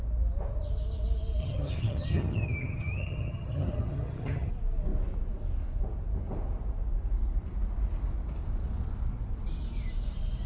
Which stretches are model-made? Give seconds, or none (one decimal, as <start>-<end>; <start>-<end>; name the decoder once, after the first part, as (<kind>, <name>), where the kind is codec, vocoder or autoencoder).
1.4-4.5 (vocoder, HiFi-GAN)